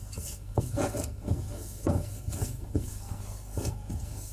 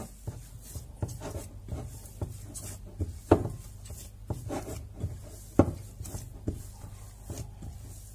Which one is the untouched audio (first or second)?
second